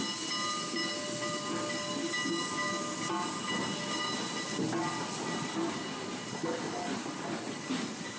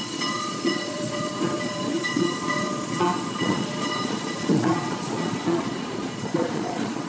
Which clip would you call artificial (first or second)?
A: second